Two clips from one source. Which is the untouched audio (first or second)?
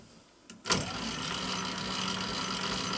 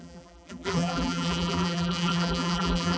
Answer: first